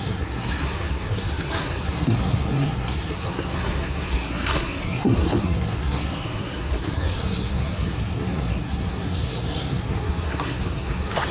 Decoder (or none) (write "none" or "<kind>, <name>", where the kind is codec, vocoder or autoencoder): codec, SNAC